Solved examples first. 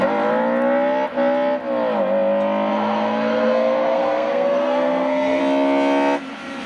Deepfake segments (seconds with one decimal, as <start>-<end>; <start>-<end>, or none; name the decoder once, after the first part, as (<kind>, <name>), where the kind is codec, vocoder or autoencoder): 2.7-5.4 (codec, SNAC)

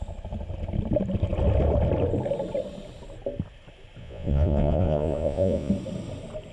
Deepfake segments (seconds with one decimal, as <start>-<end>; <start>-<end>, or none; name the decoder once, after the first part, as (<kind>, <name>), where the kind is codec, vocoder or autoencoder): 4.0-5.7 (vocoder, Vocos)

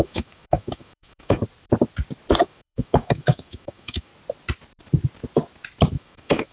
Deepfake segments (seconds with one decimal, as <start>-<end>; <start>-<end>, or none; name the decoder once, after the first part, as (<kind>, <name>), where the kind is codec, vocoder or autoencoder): 0.0-1.4 (autoencoder, DAC-VAE); 2.4-4.1; 5.9-6.5

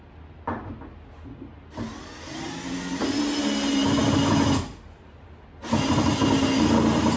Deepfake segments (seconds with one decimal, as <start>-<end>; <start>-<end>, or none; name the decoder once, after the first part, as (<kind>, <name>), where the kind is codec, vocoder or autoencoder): none